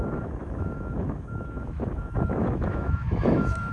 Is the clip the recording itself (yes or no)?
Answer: no